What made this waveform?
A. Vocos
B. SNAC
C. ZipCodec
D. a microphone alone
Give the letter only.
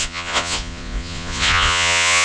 A